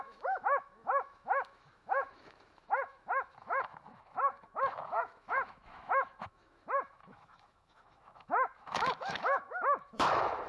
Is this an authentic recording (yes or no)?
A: no